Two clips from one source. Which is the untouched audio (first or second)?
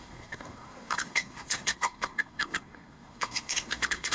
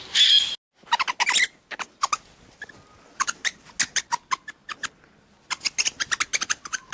second